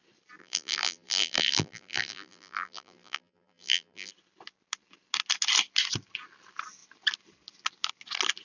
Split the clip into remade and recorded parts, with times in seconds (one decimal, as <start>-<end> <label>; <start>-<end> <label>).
0.0-0.4 recorded; 0.4-4.1 remade; 4.1-8.4 recorded